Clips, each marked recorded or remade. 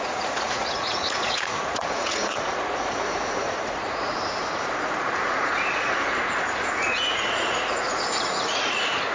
remade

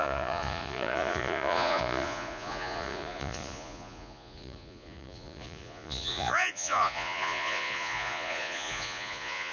remade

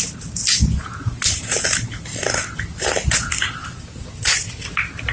recorded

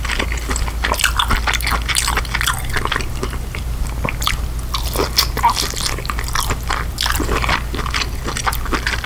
recorded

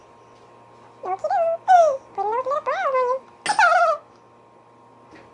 recorded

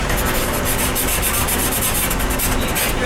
recorded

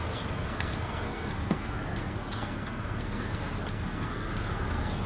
remade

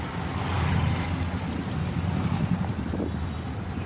recorded